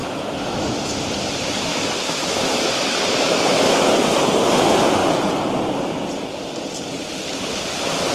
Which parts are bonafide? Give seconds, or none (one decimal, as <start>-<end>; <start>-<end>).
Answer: 1.0-1.7; 3.9-8.1